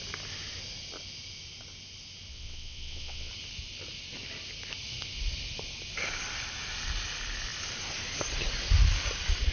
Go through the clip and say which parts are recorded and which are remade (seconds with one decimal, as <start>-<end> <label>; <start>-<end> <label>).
0.0-2.3 recorded; 2.3-3.3 remade; 3.3-9.5 recorded